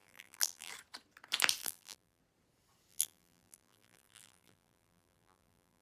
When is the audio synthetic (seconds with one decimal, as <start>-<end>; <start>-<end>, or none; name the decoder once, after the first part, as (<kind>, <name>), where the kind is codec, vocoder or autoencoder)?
0.0-0.7 (vocoder, BigVGAN v2); 1.6-2.2; 2.9-5.8